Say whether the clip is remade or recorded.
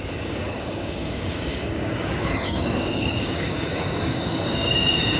remade